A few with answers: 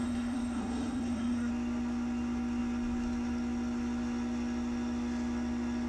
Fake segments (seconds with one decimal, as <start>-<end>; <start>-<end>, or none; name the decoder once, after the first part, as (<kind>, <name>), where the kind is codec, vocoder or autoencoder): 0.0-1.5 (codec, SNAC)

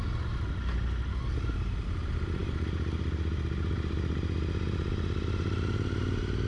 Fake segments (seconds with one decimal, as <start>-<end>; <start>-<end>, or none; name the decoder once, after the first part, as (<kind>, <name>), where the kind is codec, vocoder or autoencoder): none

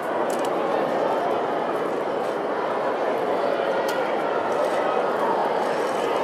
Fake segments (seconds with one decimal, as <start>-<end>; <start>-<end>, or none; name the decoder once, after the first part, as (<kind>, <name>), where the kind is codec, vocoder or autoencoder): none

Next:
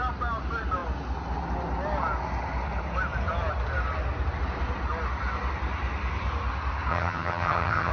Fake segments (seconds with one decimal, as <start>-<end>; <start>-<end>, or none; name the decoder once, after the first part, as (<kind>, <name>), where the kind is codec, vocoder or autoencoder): 6.9-7.9 (vocoder, HiFi-GAN)

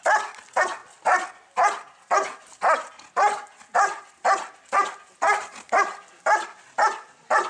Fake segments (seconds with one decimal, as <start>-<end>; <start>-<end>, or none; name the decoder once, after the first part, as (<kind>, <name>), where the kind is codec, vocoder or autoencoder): none

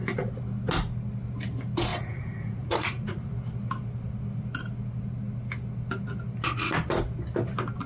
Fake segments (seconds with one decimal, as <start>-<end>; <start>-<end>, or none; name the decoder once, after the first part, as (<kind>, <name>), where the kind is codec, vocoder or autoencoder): 1.9-3.3 (vocoder, Vocos)

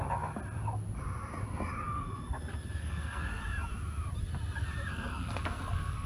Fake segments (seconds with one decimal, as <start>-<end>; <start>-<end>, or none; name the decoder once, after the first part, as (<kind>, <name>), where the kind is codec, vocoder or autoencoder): 2.8-3.4 (codec, SNAC); 4.9-6.1

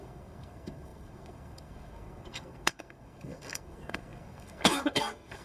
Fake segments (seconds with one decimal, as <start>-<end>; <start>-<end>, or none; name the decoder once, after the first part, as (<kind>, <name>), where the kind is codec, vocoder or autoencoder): 0.0-5.4 (codec, SNAC)